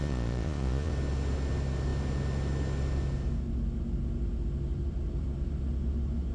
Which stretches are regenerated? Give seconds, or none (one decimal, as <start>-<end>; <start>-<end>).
0.0-0.9